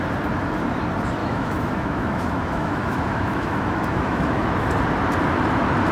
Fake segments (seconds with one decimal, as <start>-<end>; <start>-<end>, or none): 1.2-4.7